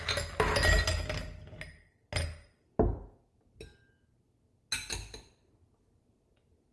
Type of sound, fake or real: real